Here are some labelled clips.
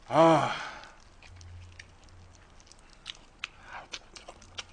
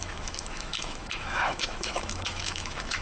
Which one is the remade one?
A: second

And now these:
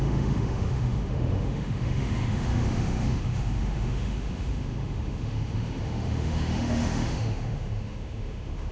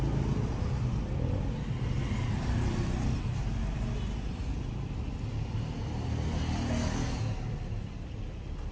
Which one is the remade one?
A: first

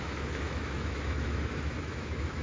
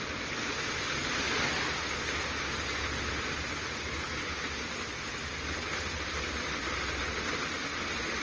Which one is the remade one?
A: first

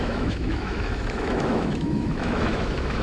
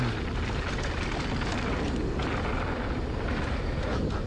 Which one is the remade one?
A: first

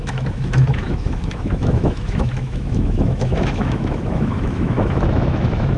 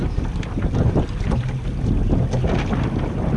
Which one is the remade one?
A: first